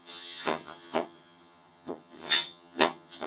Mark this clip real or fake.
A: fake